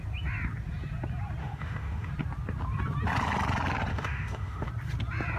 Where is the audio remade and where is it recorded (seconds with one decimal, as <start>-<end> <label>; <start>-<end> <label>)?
0.0-1.4 recorded; 1.4-2.1 remade; 2.1-3.9 recorded; 3.9-4.7 remade; 4.7-5.4 recorded